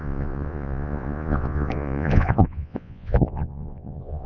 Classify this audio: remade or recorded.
remade